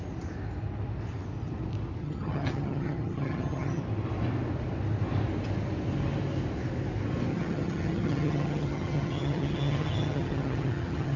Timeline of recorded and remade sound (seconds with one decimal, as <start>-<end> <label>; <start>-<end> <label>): 0.0-2.0 recorded; 2.0-3.8 remade; 3.8-7.3 recorded; 7.3-11.2 remade